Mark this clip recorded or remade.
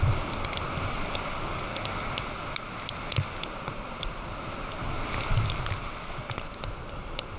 recorded